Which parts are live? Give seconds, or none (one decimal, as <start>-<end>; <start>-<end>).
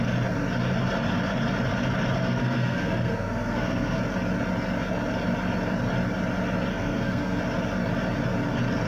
0.0-2.2; 4.0-6.7; 7.4-8.9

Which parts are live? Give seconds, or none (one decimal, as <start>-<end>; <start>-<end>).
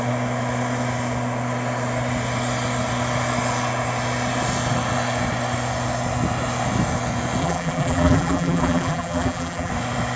0.0-7.4; 9.7-10.2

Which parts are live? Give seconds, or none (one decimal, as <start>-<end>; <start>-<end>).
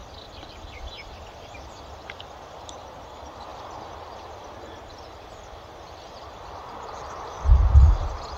0.0-8.4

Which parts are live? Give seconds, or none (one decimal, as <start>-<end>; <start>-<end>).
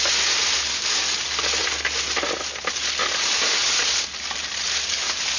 0.0-5.4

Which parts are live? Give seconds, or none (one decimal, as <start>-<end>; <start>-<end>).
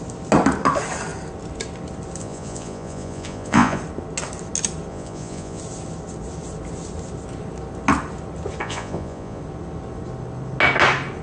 0.0-2.2; 3.8-4.9; 5.6-8.6; 9.4-11.2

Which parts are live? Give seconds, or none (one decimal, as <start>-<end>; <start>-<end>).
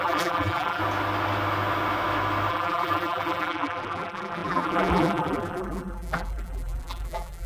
0.8-2.5